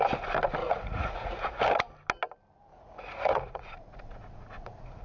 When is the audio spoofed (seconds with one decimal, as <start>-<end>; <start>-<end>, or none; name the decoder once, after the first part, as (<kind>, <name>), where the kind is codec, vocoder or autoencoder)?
0.6-1.6 (vocoder, Vocos); 2.7-5.0